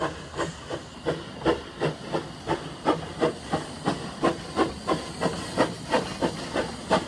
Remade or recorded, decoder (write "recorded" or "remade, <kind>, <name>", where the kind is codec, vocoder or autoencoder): recorded